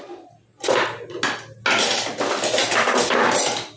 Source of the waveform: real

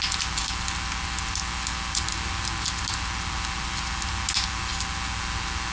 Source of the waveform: real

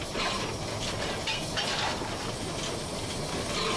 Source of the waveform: real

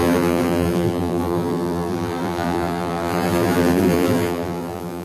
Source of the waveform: fake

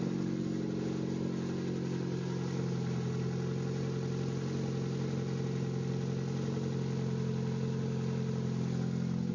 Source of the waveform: real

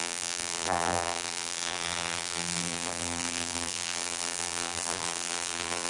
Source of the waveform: fake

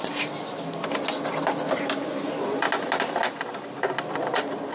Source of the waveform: real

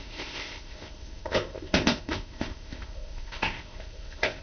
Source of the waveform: fake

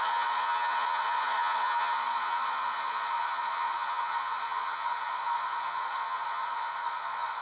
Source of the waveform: fake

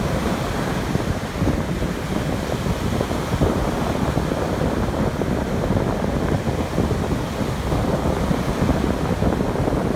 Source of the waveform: real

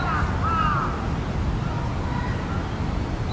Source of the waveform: real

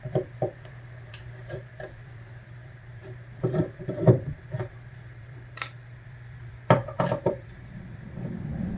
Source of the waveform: fake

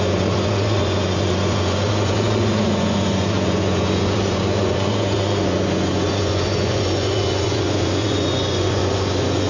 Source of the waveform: fake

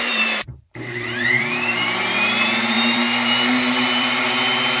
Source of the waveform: fake